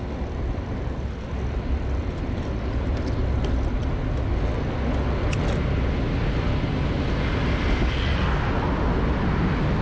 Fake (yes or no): no